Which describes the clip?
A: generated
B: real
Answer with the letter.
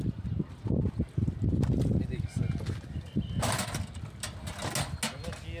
B